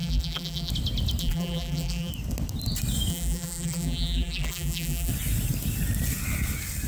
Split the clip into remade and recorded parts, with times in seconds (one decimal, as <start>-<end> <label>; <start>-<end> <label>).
0.0-0.7 remade; 0.7-1.2 recorded; 1.2-2.1 remade; 2.1-3.1 recorded; 3.1-5.1 remade; 5.1-6.9 recorded